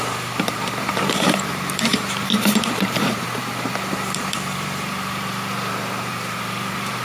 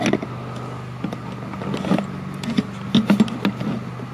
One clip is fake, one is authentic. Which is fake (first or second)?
first